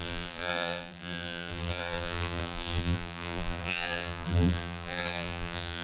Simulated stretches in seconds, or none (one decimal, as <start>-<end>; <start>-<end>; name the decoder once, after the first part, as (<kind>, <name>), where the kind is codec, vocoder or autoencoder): 0.0-5.8 (vocoder, BigVGAN v2)